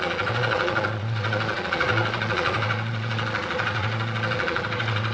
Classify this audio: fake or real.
fake